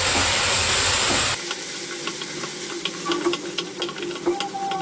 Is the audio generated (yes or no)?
no